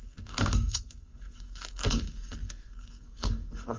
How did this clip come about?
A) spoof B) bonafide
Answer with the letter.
A